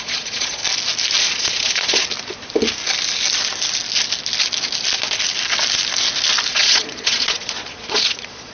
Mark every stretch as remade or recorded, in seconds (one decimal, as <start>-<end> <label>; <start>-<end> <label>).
0.0-0.6 remade; 0.6-1.3 recorded; 1.3-2.0 remade; 2.0-6.5 recorded; 6.5-8.5 remade